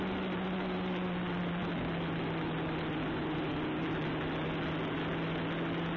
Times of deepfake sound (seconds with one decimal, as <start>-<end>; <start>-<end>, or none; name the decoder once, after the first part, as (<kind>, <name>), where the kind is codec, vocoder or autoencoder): none

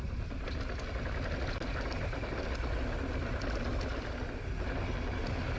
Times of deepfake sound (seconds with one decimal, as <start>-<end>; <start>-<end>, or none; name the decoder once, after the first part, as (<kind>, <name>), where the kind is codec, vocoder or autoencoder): none

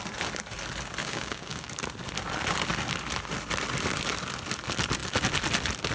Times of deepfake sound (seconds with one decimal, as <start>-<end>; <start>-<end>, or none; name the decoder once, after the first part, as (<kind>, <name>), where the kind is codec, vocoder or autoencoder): 1.0-1.7 (codec, DAC)

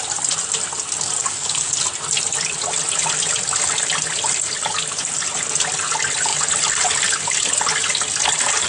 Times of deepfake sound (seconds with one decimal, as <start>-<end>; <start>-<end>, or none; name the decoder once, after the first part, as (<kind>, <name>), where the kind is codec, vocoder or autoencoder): 1.2-1.7 (codec, DAC)

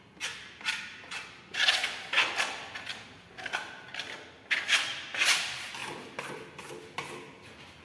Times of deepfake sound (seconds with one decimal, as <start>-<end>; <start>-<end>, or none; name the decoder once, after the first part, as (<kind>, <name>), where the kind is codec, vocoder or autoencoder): none

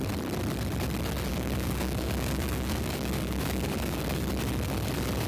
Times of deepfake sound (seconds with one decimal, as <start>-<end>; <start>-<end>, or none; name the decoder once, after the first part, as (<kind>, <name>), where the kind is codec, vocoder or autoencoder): 1.3-4.2 (codec, DAC)

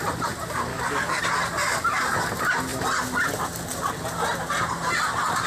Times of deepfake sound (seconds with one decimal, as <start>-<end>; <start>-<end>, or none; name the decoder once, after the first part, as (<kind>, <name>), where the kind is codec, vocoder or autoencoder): 0.7-1.2 (codec, DAC)